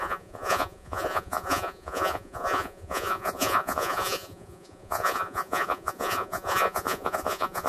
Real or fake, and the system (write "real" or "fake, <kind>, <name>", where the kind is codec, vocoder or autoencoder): fake, vocoder, Vocos